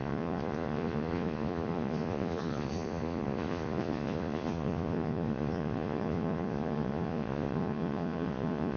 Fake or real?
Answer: fake